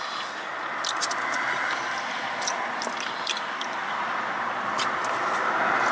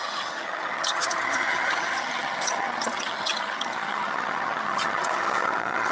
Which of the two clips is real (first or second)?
first